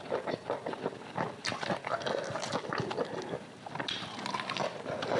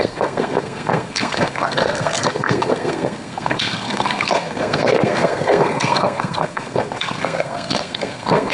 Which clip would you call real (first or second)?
first